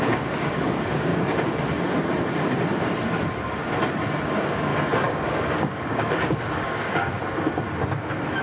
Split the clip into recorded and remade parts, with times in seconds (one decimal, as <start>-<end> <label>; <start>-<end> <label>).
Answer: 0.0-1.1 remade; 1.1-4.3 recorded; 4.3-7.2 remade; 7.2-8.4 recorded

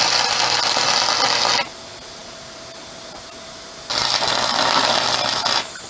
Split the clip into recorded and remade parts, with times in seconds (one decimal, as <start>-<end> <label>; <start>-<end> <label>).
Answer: 0.0-5.9 recorded

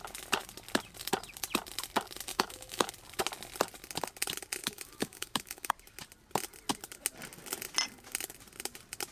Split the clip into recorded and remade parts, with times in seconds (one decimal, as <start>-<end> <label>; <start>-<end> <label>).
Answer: 0.0-2.3 recorded; 2.3-2.9 remade; 2.9-4.6 recorded; 4.6-5.7 remade; 5.7-9.1 recorded